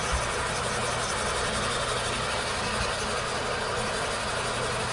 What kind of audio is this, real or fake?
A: real